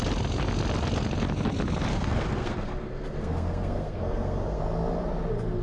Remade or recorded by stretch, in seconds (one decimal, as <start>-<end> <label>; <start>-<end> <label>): 0.0-1.9 recorded; 1.9-4.6 remade; 4.6-5.6 recorded